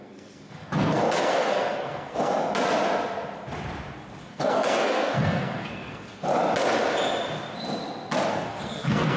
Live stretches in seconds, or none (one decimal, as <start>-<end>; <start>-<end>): 2.3-4.2; 6.3-8.3

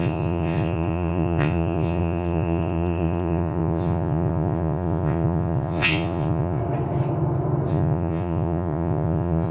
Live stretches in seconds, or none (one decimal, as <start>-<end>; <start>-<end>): 6.6-7.7

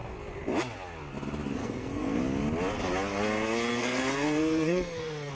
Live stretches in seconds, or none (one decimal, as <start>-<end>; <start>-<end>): 0.0-1.6; 2.2-3.7

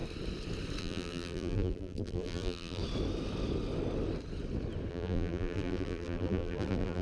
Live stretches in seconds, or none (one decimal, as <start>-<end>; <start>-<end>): 0.0-0.8; 2.8-4.9

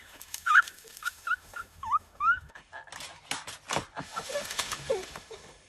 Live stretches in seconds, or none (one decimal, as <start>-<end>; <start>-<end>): 2.7-4.0

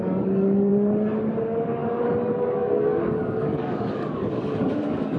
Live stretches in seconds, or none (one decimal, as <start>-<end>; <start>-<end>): 0.7-1.4

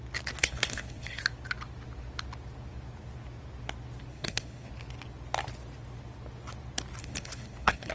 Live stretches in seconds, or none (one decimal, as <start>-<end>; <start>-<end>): 0.0-0.4; 1.2-4.1; 4.7-7.0

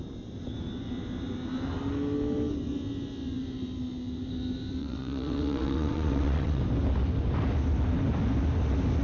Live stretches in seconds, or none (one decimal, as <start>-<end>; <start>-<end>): 0.0-4.8; 6.6-9.0